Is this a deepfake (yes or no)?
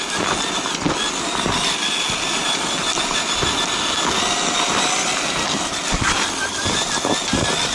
no